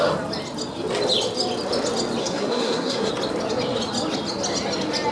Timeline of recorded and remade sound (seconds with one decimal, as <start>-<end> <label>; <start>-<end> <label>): 0.0-2.2 recorded; 2.2-3.1 remade; 3.1-5.1 recorded